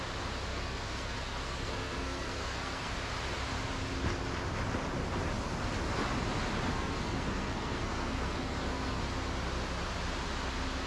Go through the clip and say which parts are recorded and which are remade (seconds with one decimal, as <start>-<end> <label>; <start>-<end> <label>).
0.0-0.5 recorded; 0.5-3.0 remade; 3.0-6.7 recorded; 6.7-9.0 remade; 9.0-10.9 recorded